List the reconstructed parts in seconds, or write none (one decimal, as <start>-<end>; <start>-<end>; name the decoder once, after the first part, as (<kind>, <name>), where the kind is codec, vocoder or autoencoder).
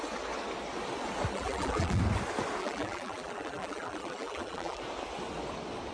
1.3-2.0 (vocoder, BigVGAN v2); 2.6-4.8